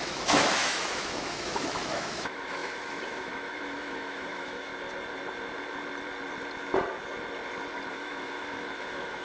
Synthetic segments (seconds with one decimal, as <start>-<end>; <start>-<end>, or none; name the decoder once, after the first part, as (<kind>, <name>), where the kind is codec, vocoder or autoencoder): 0.0-4.7 (autoencoder, DAC-VAE); 7.9-9.2